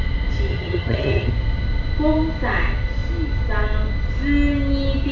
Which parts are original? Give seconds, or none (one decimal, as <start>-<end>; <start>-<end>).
0.0-0.5; 1.3-5.1